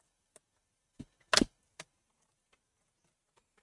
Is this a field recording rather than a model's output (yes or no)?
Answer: yes